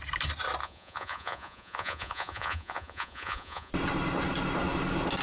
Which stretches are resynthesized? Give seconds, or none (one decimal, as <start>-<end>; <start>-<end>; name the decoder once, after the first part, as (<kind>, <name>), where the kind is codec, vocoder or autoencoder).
0.6-3.7 (vocoder, Vocos)